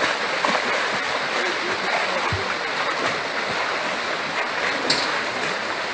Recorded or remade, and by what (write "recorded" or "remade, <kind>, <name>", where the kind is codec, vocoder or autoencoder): recorded